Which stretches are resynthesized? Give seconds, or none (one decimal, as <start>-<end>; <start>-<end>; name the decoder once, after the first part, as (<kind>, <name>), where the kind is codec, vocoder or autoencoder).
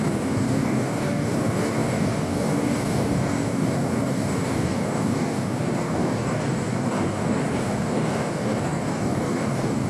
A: 0.0-9.9 (codec, DAC)